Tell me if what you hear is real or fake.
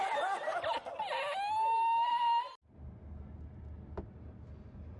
real